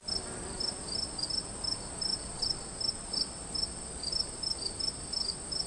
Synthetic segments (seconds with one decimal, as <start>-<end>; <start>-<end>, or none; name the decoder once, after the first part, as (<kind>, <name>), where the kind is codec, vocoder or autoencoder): none